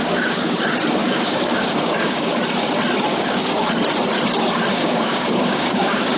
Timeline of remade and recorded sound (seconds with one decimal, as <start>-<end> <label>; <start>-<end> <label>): 0.0-0.6 remade; 0.6-1.0 recorded; 1.0-2.3 remade; 2.3-3.1 recorded; 3.1-3.7 remade; 3.7-4.7 recorded; 4.7-6.2 remade